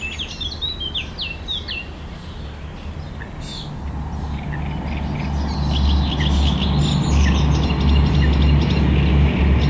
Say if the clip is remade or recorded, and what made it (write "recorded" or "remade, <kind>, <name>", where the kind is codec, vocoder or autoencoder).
recorded